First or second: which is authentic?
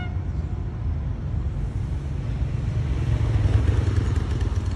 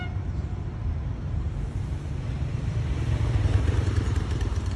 first